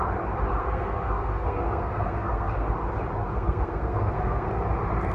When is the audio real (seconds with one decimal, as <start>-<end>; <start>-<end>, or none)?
0.0-0.6; 2.7-3.3; 4.5-5.1

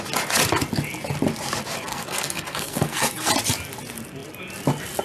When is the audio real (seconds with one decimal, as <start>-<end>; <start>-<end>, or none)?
0.0-1.9; 3.3-5.0

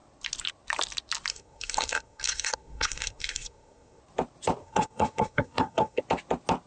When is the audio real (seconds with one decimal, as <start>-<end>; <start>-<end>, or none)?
0.0-1.3; 4.0-4.6; 6.0-6.7